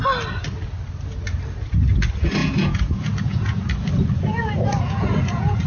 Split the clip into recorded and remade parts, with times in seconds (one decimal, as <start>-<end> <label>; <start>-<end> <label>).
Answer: 0.0-2.4 recorded; 2.4-3.7 remade; 3.7-4.3 recorded; 4.3-5.7 remade